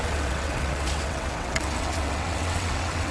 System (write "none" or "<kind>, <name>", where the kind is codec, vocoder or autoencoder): vocoder, WaveNeXt